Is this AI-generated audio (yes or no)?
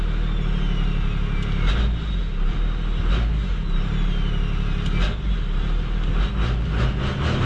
no